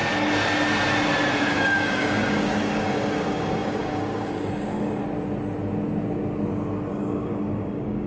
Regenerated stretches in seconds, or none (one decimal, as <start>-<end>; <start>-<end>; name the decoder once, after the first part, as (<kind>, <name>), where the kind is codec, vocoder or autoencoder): 1.5-5.0 (codec, DAC); 6.9-8.1